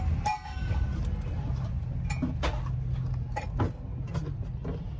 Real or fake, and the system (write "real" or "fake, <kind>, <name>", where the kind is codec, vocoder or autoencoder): real